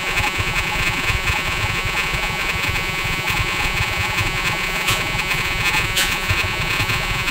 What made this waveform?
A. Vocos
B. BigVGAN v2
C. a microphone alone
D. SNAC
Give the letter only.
A